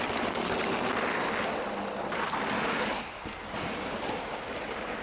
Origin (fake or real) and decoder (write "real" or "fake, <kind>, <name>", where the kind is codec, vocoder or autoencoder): real